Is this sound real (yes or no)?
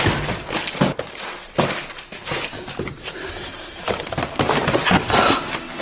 no